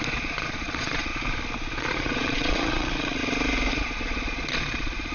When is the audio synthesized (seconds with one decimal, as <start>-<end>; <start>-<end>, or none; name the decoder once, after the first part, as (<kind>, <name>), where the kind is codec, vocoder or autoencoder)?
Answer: 0.0-1.1 (vocoder, Vocos); 1.8-3.2; 3.7-5.1